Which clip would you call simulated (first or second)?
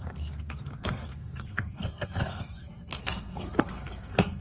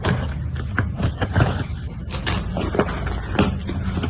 first